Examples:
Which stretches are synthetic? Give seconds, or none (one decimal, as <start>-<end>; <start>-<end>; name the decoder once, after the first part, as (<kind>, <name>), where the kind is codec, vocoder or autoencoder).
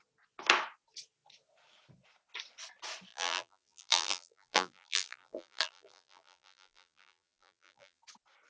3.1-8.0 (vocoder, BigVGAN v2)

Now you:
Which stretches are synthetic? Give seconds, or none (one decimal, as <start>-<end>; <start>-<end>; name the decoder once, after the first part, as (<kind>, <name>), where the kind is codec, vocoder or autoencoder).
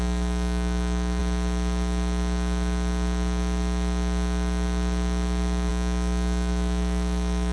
0.0-1.2 (autoencoder, DAC-VAE); 5.7-7.5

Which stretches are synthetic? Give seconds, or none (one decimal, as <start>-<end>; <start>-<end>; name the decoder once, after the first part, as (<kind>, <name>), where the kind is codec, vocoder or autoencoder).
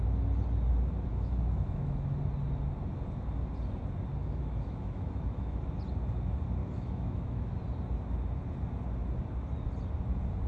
1.1-2.0 (autoencoder, DAC-VAE); 4.2-5.6; 6.6-7.5